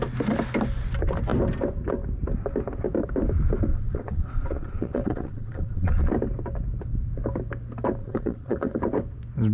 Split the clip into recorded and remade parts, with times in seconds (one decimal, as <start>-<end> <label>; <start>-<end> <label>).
0.0-3.7 recorded; 3.7-6.1 remade; 6.1-8.0 recorded; 8.0-8.8 remade; 8.8-9.5 recorded